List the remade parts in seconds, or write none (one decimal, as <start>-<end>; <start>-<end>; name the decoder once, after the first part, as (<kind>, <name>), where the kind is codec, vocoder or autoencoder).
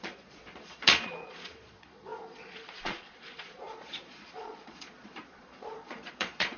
0.0-6.6 (vocoder, Vocos)